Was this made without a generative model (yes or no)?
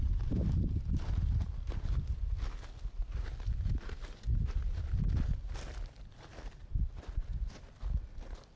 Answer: yes